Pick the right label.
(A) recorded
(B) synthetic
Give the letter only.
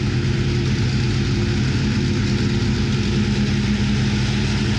A